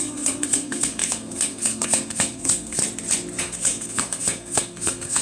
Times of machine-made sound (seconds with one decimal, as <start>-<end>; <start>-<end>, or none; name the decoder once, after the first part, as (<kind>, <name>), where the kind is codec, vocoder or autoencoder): 0.0-2.8 (codec, SNAC); 3.4-5.2